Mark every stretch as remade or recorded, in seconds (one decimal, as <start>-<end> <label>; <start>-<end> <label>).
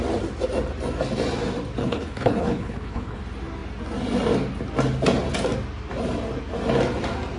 0.0-1.8 recorded; 1.8-3.2 remade; 3.2-7.4 recorded